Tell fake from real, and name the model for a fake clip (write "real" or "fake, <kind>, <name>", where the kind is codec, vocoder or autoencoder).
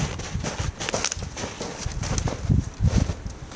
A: real